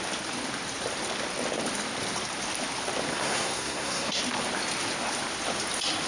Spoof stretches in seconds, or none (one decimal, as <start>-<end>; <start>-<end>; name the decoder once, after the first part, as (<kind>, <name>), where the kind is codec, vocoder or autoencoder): 3.1-4.2 (codec, SNAC)